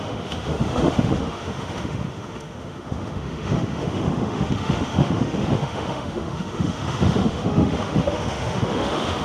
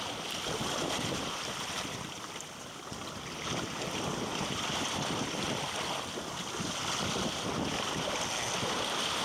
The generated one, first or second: first